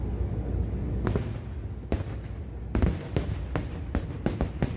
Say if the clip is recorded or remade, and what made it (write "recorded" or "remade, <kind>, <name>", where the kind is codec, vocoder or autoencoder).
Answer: recorded